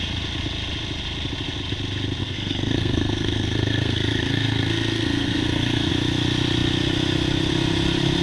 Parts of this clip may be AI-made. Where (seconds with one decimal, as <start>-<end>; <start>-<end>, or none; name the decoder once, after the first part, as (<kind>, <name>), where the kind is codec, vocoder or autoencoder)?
2.2-5.9 (codec, SNAC)